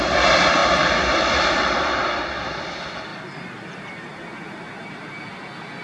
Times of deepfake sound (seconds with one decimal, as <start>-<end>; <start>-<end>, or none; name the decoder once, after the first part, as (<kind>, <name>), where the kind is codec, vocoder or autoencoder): 0.6-2.2 (vocoder, BigVGAN v2); 3.1-5.2